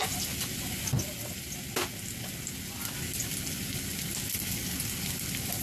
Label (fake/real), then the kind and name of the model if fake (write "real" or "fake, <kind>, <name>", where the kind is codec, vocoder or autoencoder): real